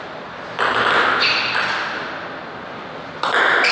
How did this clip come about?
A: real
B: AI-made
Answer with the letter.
A